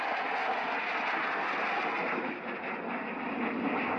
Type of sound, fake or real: real